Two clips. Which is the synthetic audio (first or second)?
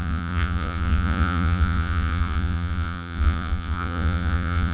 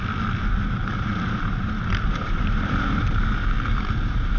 first